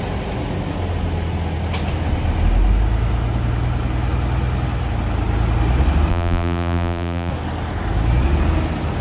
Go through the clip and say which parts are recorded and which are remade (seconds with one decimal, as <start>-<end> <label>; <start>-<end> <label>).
0.0-6.1 recorded; 6.1-7.3 remade; 7.3-9.0 recorded